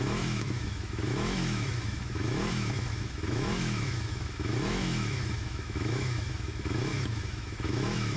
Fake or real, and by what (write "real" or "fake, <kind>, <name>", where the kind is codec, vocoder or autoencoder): fake, autoencoder, DAC-VAE